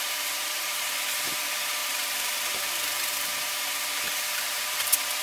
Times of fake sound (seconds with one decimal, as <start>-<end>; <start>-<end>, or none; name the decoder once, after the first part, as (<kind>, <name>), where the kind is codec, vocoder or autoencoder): 0.0-5.2 (vocoder, BigVGAN v2)